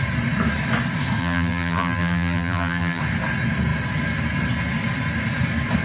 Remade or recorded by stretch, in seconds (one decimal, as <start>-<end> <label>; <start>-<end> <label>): 0.0-1.2 recorded; 1.2-3.0 remade; 3.0-5.8 recorded